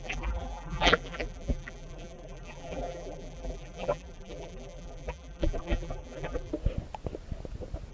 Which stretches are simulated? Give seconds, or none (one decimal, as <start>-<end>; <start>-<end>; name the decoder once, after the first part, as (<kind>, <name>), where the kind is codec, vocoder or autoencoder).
0.0-6.5 (vocoder, BigVGAN v2)